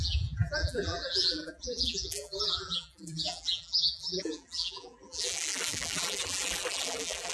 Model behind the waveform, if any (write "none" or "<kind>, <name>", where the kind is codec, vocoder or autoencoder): vocoder, BigVGAN v2